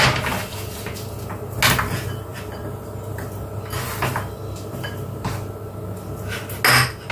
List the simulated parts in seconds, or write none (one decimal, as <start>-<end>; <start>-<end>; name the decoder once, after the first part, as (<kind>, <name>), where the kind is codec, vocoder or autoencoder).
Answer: none